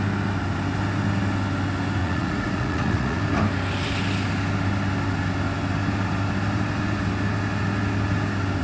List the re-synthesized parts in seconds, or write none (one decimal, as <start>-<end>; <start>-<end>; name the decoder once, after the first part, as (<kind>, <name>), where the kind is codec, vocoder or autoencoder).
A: 2.0-3.2 (vocoder, Vocos)